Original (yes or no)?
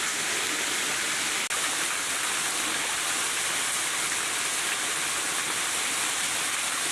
yes